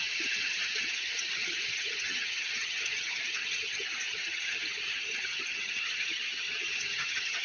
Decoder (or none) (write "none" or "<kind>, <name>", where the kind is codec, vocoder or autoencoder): vocoder, HiFi-GAN